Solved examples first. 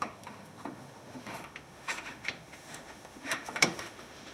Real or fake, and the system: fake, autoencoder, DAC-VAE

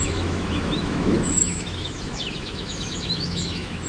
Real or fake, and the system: fake, autoencoder, DAC-VAE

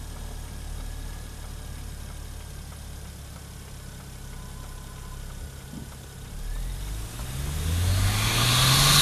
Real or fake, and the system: real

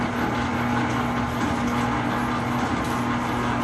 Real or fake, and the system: real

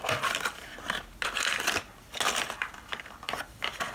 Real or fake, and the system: real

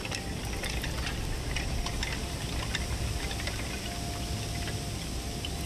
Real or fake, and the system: real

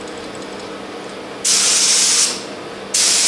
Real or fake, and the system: real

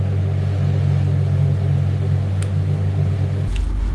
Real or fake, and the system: real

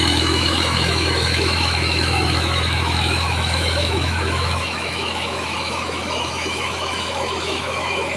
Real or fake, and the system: fake, autoencoder, DAC-VAE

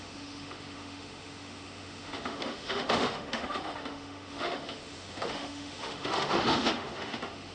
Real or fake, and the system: fake, autoencoder, DAC-VAE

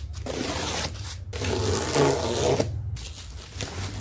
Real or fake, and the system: real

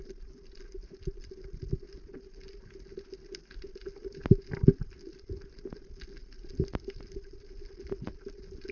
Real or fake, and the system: real